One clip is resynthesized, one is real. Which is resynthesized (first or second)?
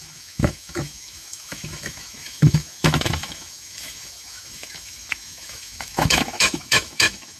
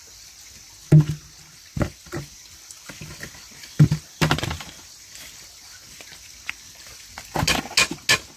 first